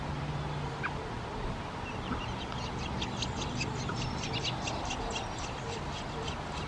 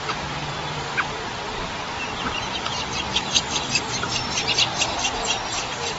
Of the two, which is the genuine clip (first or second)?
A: first